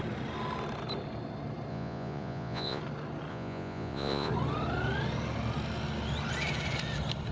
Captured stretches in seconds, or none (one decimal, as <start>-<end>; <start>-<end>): 0.0-1.7; 2.8-3.3; 4.3-7.3